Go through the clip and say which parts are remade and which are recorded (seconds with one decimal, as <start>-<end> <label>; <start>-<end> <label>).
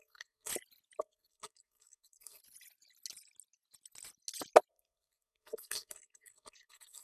0.0-0.5 remade; 0.5-1.0 recorded; 1.0-2.4 remade; 2.4-4.7 recorded; 4.7-7.0 remade